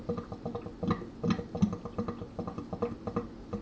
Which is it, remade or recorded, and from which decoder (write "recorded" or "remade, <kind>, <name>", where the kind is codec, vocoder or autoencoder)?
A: recorded